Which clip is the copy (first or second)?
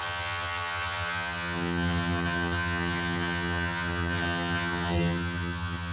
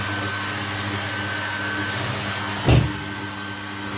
first